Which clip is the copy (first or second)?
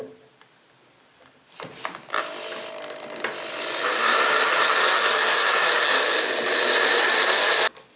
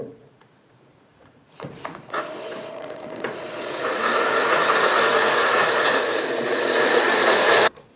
second